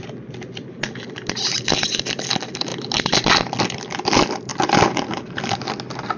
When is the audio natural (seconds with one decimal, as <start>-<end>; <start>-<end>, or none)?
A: 0.0-6.2